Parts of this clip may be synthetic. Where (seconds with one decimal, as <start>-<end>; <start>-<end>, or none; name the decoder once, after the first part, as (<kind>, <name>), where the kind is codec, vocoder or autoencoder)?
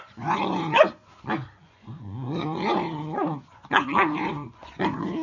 0.0-1.0 (vocoder, Vocos); 1.6-5.2